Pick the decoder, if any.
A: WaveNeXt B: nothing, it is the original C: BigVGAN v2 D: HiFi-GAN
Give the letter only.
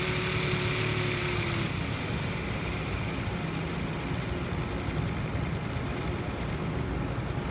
B